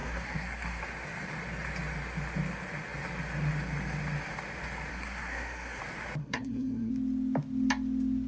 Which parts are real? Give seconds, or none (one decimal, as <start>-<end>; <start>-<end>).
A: 0.8-4.9; 5.8-6.2; 6.9-8.3